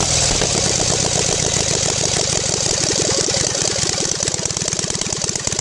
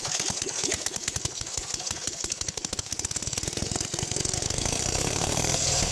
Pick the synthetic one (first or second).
second